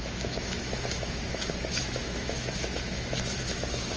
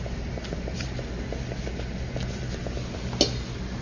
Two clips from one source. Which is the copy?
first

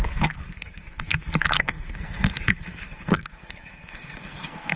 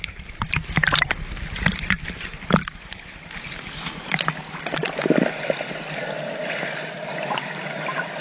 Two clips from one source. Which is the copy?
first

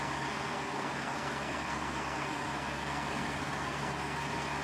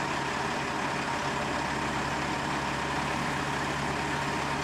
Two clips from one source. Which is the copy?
first